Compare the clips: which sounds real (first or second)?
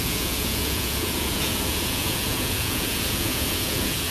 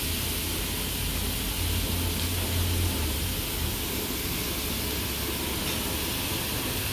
second